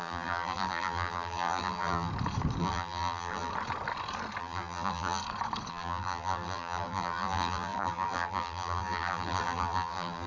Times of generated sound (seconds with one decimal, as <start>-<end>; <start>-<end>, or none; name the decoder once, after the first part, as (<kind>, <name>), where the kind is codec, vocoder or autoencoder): 0.0-2.1 (vocoder, BigVGAN v2); 2.6-3.5; 4.4-5.2; 5.7-10.3